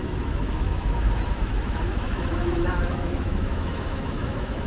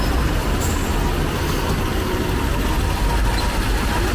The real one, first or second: second